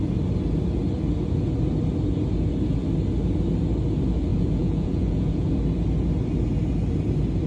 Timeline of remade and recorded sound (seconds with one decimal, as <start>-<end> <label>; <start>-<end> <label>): 0.0-4.3 recorded; 4.3-5.5 remade; 5.5-7.5 recorded

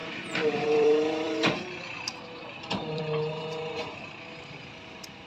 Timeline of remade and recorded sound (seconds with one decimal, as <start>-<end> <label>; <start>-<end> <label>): 0.0-3.0 remade; 3.0-5.3 recorded

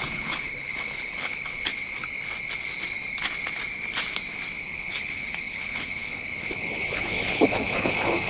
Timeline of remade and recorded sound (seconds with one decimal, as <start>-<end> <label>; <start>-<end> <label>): 0.0-1.7 remade; 1.7-4.6 recorded; 4.6-8.3 remade

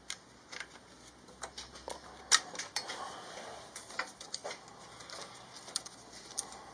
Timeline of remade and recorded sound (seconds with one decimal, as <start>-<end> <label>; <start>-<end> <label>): 0.0-6.7 recorded

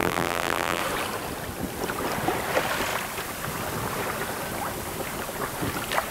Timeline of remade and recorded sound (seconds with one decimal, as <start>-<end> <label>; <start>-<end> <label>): 0.0-0.8 remade; 0.8-6.1 recorded

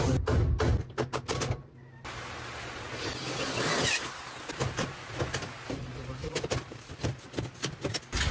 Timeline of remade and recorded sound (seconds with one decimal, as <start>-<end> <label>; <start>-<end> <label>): 0.0-6.2 recorded; 6.2-7.3 remade; 7.3-8.3 recorded

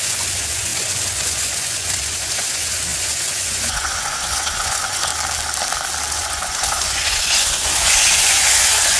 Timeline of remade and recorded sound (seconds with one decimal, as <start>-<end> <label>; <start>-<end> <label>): 0.0-5.1 remade; 5.1-6.1 recorded; 6.1-9.0 remade